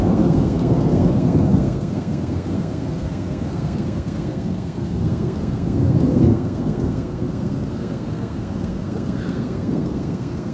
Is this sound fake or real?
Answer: fake